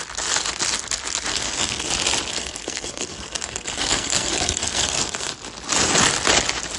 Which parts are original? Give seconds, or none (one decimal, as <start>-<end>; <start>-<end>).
0.0-1.3; 1.9-2.3; 5.3-6.8